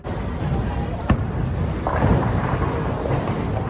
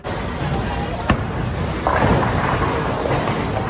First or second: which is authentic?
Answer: second